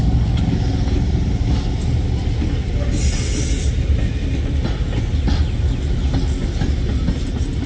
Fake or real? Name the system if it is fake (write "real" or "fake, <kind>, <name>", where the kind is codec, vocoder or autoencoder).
real